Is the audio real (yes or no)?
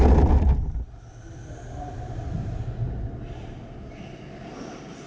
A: yes